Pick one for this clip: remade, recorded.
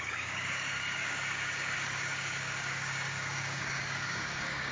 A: remade